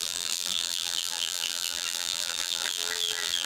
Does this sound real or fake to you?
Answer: fake